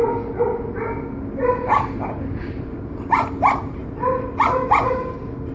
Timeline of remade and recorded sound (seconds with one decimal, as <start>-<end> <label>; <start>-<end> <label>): 0.0-5.5 recorded